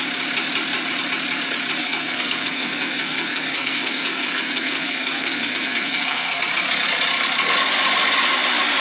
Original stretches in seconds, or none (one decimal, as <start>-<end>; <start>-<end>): 0.0-1.8; 6.4-8.8

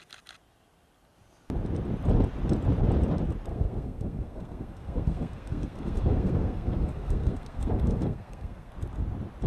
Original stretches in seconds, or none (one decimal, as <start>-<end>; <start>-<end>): 0.0-3.5; 8.7-9.5

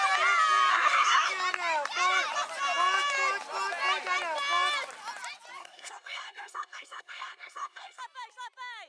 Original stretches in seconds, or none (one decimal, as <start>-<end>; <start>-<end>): 0.0-0.7; 1.3-5.6; 8.0-8.9